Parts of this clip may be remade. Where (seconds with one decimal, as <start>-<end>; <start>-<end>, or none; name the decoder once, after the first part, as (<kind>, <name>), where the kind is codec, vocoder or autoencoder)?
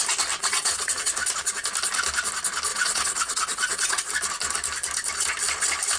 0.4-1.1 (vocoder, WaveNeXt); 2.7-4.1